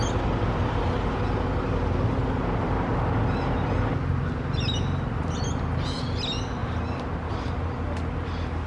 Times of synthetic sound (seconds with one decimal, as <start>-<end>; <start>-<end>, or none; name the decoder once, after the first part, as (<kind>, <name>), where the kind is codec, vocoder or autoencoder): none